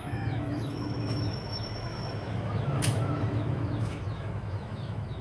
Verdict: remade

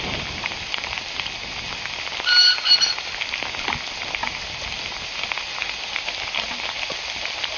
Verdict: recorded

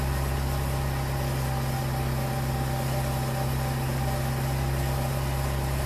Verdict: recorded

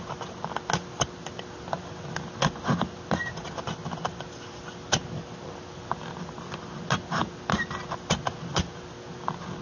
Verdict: recorded